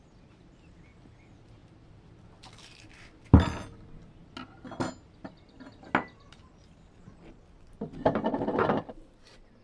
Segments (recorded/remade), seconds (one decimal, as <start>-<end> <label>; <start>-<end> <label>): 0.0-9.6 recorded